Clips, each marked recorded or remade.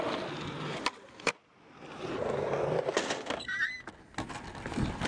recorded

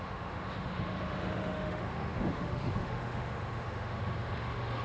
remade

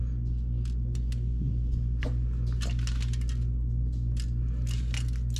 recorded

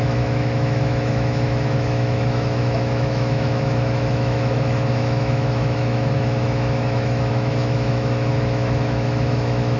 remade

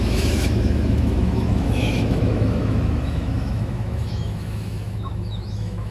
remade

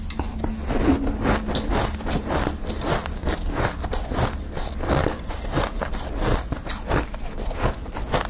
recorded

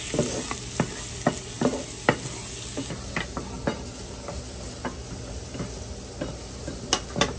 recorded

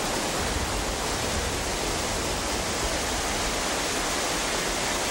recorded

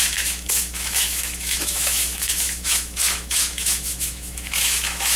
remade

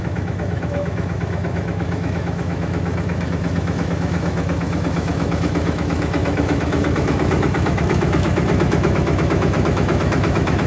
remade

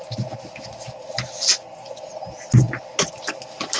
recorded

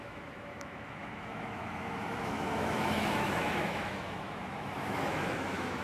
remade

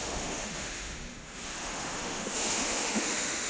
remade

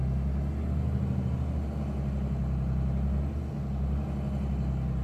recorded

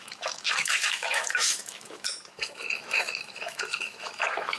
remade